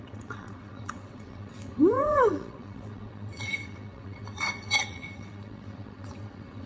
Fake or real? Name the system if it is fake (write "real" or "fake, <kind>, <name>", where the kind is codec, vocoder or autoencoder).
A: fake, vocoder, WaveNeXt